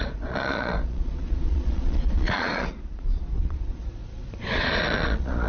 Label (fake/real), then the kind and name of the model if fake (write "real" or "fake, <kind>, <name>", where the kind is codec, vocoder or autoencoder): fake, vocoder, Vocos